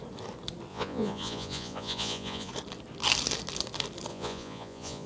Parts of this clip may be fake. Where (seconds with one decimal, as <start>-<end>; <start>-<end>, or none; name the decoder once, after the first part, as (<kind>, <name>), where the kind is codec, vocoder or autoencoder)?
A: 0.7-2.5 (vocoder, Vocos); 4.1-5.1